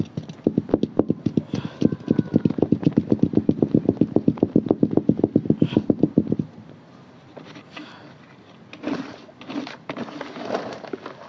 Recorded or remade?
recorded